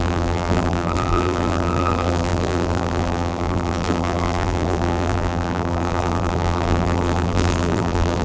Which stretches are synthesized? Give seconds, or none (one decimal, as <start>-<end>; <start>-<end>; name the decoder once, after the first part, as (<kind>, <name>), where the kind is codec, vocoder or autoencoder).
0.0-8.2 (vocoder, BigVGAN v2)